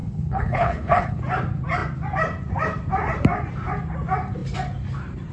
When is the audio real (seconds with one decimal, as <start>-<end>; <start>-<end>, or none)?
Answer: 1.2-5.3